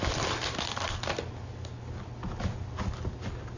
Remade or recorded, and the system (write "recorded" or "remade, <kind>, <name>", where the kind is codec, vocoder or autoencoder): recorded